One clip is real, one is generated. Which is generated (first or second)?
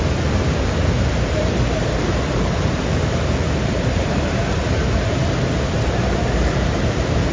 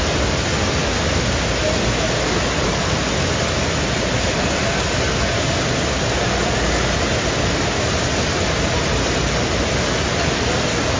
first